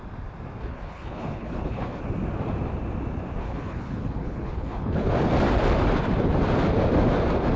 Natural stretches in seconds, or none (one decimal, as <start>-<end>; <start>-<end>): 0.0-0.6; 2.0-3.4; 5.1-7.6